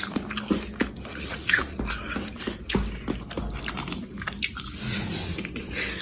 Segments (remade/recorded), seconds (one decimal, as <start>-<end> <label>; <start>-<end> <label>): 0.0-1.1 recorded; 1.1-1.8 remade; 1.8-6.0 recorded